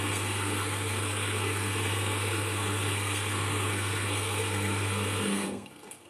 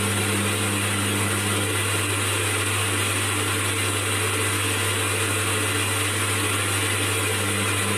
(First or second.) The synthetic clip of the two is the first